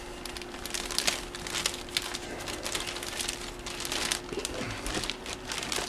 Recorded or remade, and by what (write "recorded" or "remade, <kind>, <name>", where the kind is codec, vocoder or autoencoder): recorded